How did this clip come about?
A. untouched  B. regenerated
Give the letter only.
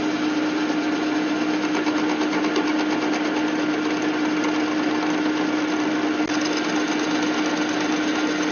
A